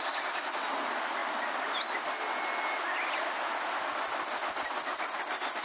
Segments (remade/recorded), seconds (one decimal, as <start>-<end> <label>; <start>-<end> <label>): 0.0-5.6 recorded